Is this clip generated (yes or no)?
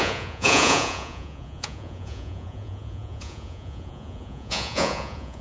yes